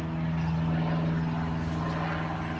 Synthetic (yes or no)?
no